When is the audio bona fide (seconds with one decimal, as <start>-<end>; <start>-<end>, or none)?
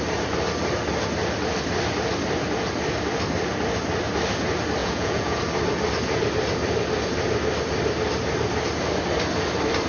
0.0-4.8; 5.4-9.9